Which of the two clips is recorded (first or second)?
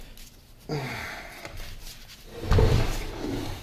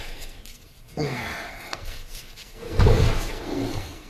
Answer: first